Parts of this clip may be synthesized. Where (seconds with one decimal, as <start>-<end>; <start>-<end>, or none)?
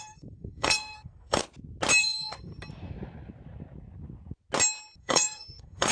0.0-1.4; 2.0-2.5; 5.0-5.9